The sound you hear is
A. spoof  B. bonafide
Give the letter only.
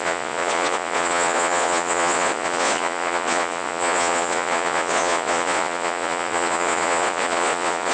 A